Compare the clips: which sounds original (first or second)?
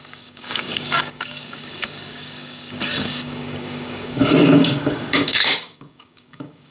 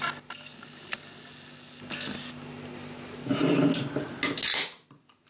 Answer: second